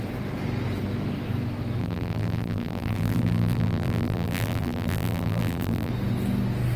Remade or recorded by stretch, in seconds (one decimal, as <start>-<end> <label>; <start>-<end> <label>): 0.0-1.8 recorded; 1.8-5.9 remade; 5.9-6.8 recorded